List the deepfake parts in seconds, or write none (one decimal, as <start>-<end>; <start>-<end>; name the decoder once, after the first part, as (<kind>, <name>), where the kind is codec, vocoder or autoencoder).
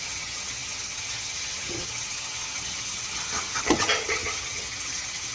0.0-5.3 (vocoder, HiFi-GAN)